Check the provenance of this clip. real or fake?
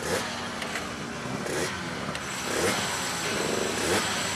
real